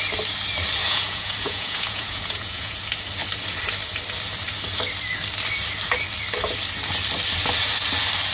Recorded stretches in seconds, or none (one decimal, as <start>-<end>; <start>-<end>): 0.0-0.8; 2.8-8.3